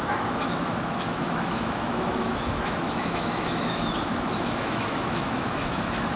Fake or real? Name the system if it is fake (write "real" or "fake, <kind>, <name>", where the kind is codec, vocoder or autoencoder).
fake, autoencoder, DAC-VAE